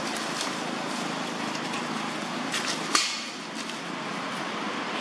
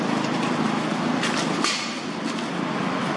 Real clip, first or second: first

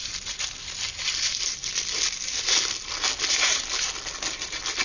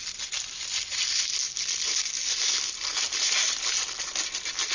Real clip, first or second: second